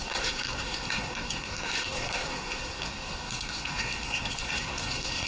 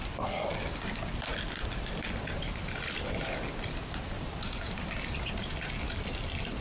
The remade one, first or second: first